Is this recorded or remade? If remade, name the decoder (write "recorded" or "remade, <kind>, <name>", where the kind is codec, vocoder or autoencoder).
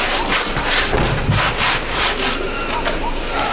recorded